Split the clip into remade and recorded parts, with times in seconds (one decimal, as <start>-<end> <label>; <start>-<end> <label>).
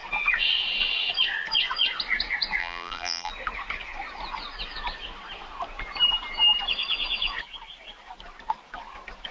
0.0-2.6 recorded; 2.6-3.3 remade; 3.3-9.3 recorded